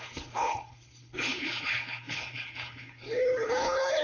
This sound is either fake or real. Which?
fake